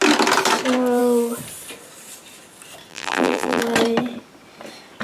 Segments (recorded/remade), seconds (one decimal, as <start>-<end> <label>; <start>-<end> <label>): 0.0-2.9 recorded; 2.9-3.6 remade; 3.6-5.0 recorded